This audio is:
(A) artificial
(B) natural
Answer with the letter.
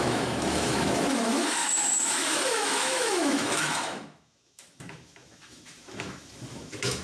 A